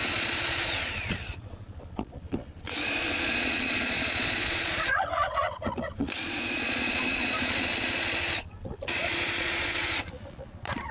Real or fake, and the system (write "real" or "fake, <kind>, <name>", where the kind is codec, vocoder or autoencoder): fake, vocoder, Vocos